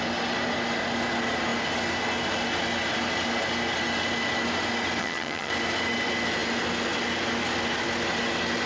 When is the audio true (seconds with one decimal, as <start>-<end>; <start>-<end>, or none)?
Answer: 0.0-5.0; 5.5-8.7